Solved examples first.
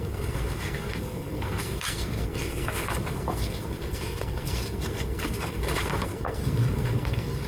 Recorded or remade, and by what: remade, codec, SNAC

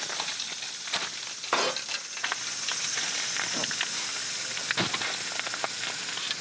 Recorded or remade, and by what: recorded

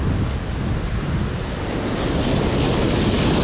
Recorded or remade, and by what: recorded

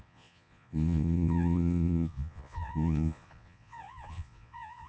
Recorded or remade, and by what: remade, vocoder, Vocos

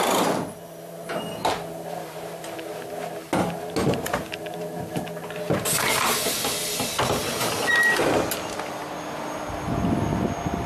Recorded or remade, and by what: recorded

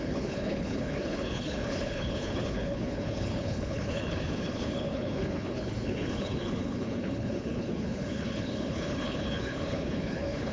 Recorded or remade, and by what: remade, codec, HILCodec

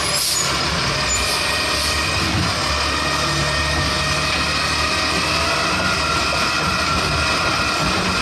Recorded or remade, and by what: recorded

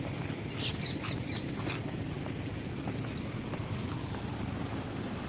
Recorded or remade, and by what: remade, vocoder, BigVGAN v2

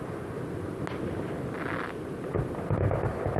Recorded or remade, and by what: recorded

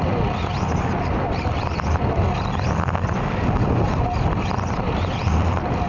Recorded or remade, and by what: recorded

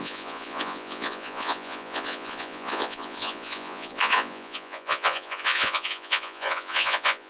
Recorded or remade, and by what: remade, vocoder, Vocos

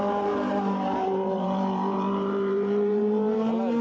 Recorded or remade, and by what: remade, vocoder, BigVGAN v2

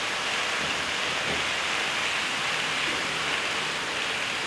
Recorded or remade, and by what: recorded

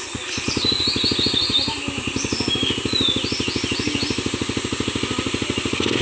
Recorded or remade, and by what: recorded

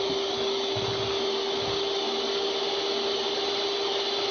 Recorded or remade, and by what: recorded